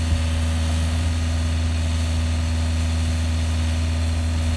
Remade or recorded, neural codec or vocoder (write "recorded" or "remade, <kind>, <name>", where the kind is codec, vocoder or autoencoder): recorded